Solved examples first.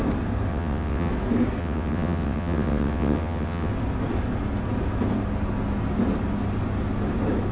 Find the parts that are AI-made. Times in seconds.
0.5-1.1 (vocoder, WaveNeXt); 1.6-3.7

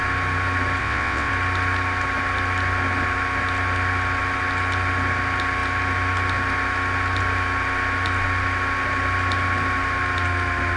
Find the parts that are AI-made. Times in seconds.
0.8-1.3 (vocoder, WaveNeXt)

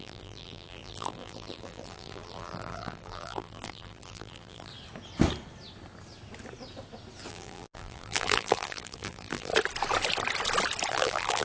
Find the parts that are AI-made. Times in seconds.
0.0-4.7 (vocoder, BigVGAN v2); 7.3-9.5; 10.9-11.4